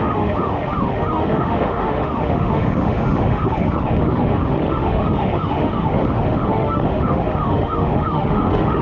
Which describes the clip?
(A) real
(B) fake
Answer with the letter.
B